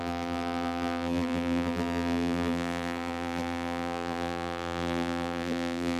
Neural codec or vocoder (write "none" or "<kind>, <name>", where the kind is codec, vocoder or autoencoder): vocoder, BigVGAN v2